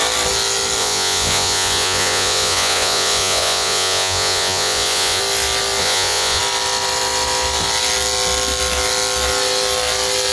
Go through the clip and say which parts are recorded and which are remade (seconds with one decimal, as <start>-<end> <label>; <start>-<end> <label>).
0.0-0.8 recorded; 0.8-5.2 remade; 5.2-5.8 recorded; 5.8-6.4 remade; 6.4-10.3 recorded